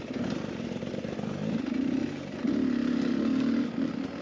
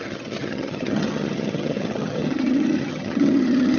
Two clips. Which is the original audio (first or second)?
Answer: first